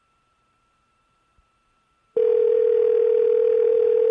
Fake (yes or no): yes